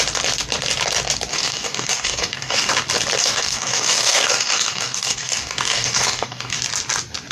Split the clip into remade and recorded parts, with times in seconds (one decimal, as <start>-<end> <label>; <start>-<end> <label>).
0.0-1.3 recorded; 1.3-2.7 remade; 2.7-3.2 recorded; 3.2-6.6 remade; 6.6-7.3 recorded